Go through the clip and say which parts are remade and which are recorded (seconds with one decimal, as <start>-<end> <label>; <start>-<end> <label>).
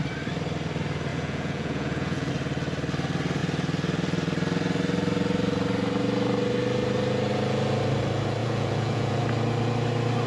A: 0.0-1.1 recorded; 1.1-2.3 remade; 2.3-8.4 recorded; 8.4-9.2 remade; 9.2-10.3 recorded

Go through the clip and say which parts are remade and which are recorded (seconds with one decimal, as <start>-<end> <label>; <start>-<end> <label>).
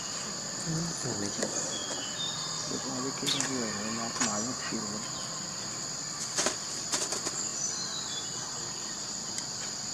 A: 0.0-1.8 remade; 1.8-6.3 recorded; 6.3-9.9 remade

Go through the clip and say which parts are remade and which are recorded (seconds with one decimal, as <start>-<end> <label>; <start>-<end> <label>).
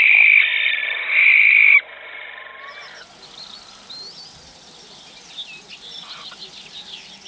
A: 0.0-7.3 recorded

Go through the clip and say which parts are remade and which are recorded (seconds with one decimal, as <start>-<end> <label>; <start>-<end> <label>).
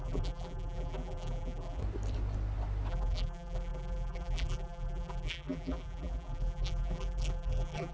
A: 0.0-1.8 remade; 1.8-2.9 recorded; 2.9-7.9 remade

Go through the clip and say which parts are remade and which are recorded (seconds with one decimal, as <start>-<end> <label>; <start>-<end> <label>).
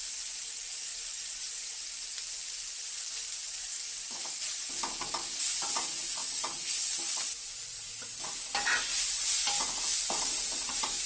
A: 0.0-0.9 recorded; 0.9-1.9 remade; 1.9-3.4 recorded; 3.4-4.3 remade; 4.3-11.1 recorded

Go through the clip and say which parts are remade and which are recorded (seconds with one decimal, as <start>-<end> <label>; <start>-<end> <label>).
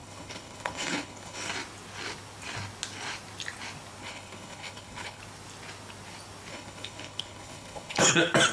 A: 0.0-1.5 remade; 1.5-4.0 recorded; 4.0-5.2 remade; 5.2-6.5 recorded; 6.5-8.1 remade; 8.1-8.5 recorded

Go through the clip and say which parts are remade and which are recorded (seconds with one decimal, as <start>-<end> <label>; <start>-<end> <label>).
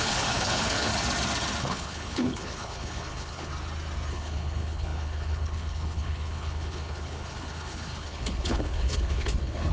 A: 0.0-0.9 remade; 0.9-1.6 recorded; 1.6-3.5 remade; 3.5-4.1 recorded; 4.1-9.7 remade